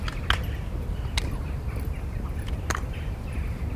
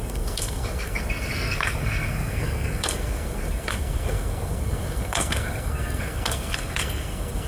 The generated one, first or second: second